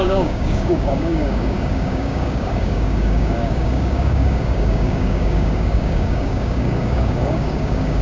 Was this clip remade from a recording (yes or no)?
yes